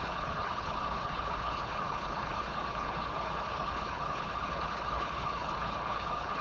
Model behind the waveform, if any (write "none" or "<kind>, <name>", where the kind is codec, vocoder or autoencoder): codec, HILCodec